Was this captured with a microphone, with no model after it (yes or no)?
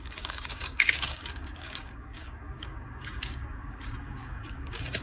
no